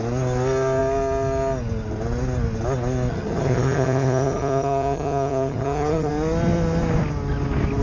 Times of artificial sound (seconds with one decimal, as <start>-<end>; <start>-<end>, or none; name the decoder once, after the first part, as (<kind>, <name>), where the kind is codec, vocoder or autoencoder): 3.1-6.1 (vocoder, HiFi-GAN)